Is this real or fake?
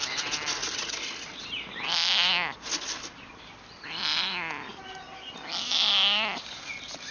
real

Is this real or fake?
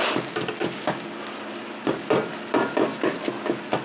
real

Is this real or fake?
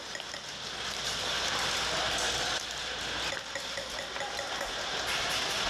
real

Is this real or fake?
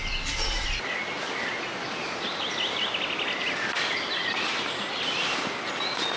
real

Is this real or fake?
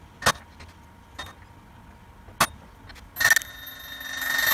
real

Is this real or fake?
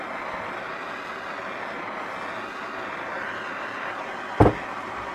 real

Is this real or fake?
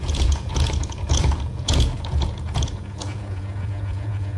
fake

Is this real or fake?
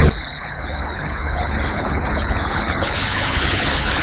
fake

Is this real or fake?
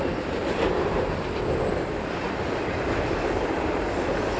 fake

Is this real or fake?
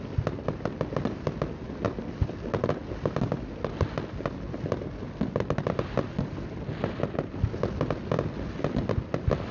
real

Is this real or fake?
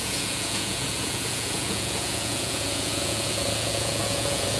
fake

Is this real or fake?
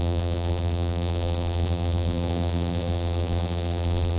fake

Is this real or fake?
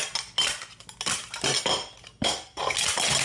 real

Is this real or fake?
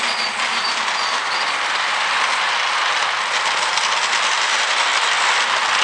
real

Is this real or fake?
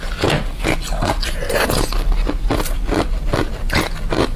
real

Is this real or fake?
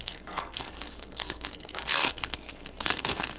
fake